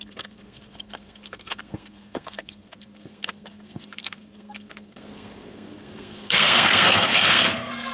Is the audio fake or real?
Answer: fake